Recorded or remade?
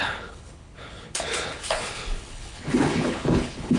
remade